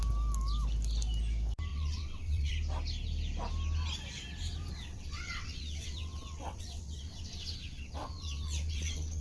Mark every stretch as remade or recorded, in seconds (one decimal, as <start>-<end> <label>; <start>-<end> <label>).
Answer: 0.0-1.7 recorded; 1.7-2.5 remade; 2.5-4.7 recorded; 4.7-9.2 remade